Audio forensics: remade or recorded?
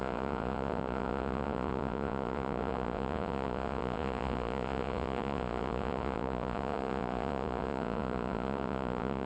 remade